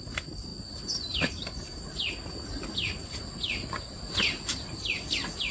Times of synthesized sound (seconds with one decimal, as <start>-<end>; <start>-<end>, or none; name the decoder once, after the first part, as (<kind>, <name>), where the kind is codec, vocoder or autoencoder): none